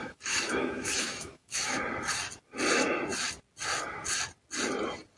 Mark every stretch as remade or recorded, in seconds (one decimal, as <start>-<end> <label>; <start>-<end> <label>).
0.0-1.8 remade; 1.8-5.2 recorded